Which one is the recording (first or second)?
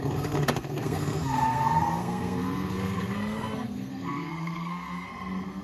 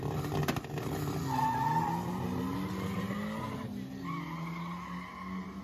second